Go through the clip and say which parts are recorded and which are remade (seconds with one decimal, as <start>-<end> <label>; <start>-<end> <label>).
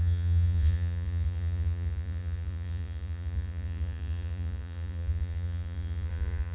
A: 0.0-6.5 remade